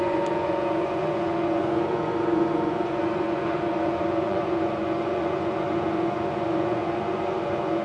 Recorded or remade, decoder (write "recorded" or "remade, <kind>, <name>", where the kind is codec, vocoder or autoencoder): remade, vocoder, Vocos